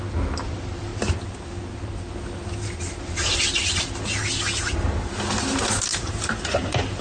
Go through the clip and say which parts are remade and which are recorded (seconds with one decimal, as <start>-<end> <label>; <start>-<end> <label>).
0.0-5.9 recorded; 5.9-7.0 remade